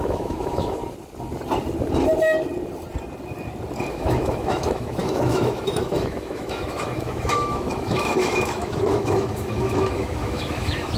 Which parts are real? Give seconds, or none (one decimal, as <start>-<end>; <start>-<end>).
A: 0.8-3.9